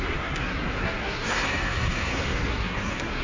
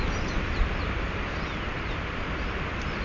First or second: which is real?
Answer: second